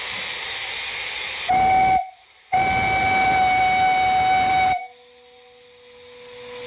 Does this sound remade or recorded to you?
recorded